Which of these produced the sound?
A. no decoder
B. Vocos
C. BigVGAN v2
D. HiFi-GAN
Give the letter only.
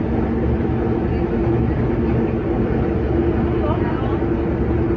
A